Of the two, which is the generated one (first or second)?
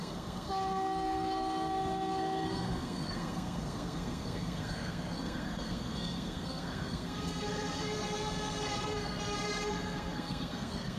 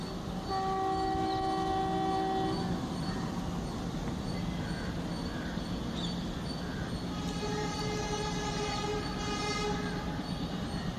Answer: first